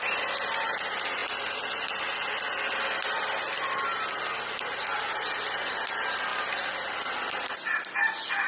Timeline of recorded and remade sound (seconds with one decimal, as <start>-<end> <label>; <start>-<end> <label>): 0.0-6.3 recorded; 6.3-7.5 remade; 7.5-8.5 recorded